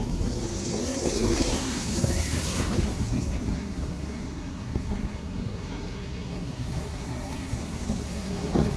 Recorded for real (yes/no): no